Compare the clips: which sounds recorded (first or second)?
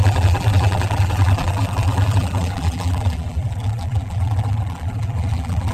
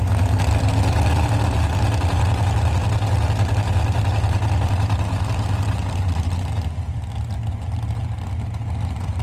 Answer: second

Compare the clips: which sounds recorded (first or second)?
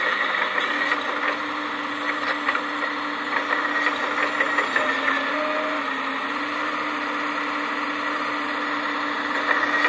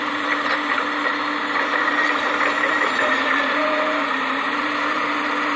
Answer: first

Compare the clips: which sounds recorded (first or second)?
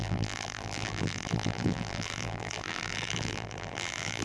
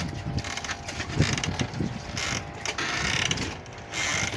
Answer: second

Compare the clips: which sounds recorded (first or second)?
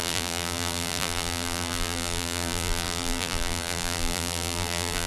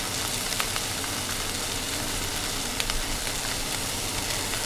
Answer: second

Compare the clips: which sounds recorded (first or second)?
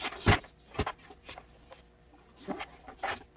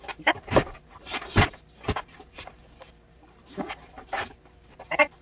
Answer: first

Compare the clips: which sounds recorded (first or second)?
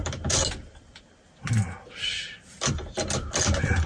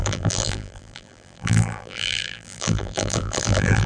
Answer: first